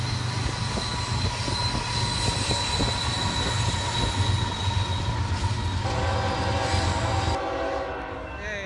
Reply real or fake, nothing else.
real